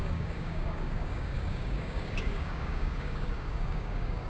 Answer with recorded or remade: remade